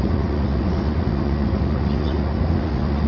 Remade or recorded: remade